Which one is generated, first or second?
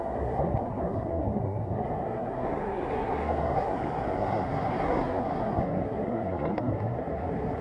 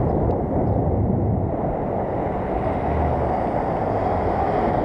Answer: first